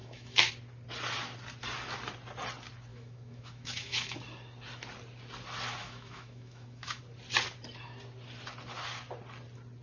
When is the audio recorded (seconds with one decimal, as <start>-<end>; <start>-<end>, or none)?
0.5-2.9; 4.2-5.8; 7.0-9.8